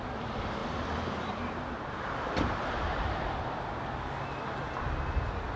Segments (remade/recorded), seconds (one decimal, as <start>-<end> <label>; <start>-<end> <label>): 0.0-0.6 recorded; 0.6-3.7 remade; 3.7-5.6 recorded

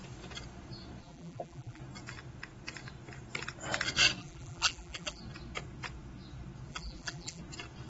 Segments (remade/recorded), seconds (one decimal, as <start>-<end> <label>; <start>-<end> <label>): 0.0-1.0 recorded; 1.0-1.8 remade; 1.8-4.2 recorded; 4.2-5.2 remade; 5.2-6.7 recorded; 6.7-7.4 remade; 7.4-7.9 recorded